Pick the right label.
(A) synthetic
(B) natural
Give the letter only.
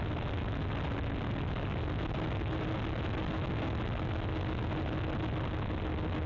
B